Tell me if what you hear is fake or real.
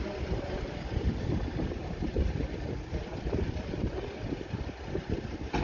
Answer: real